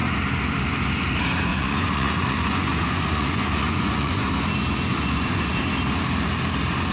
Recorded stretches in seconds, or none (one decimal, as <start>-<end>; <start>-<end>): 0.0-1.5; 4.3-4.9; 5.6-6.9